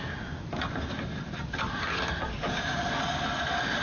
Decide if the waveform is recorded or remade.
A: recorded